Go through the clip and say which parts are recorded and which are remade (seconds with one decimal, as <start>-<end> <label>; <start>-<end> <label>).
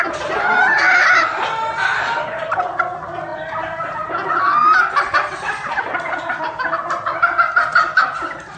0.0-8.6 recorded